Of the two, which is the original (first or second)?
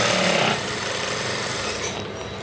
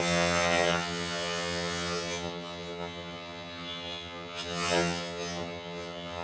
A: first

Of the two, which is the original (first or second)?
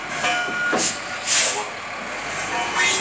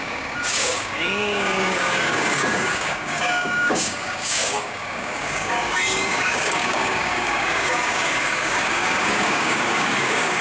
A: first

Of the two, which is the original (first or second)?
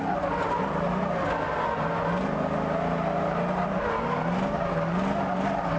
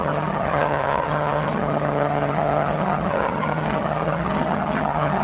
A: first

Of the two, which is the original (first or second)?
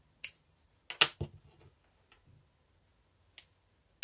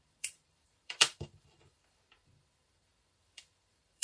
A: first